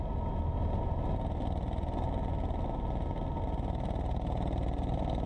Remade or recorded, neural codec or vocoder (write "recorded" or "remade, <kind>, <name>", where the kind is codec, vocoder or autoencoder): recorded